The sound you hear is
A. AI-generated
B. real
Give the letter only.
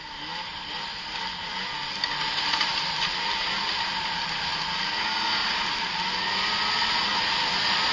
B